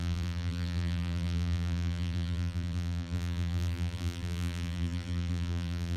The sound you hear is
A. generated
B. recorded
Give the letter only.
A